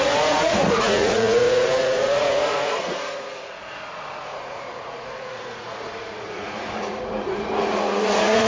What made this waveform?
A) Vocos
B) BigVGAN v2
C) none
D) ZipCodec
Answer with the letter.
A